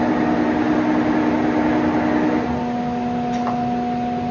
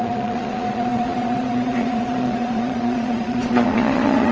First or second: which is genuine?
first